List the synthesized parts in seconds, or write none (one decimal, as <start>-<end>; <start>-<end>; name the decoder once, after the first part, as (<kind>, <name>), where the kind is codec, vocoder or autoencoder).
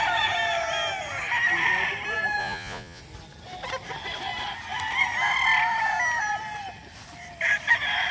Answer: 2.4-3.0 (vocoder, Vocos)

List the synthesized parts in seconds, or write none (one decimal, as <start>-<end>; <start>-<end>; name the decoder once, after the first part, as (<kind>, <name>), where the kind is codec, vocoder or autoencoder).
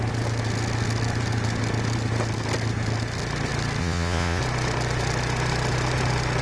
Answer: 3.8-4.4 (vocoder, Vocos)